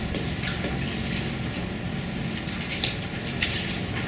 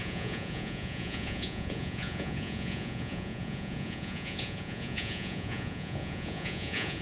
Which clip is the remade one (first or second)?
second